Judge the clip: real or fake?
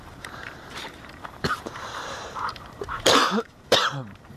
fake